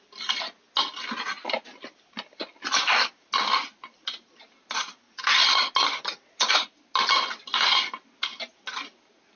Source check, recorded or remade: recorded